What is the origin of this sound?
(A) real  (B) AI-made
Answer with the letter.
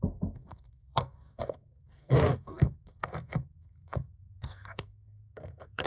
B